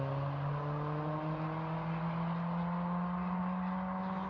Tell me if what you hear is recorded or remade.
recorded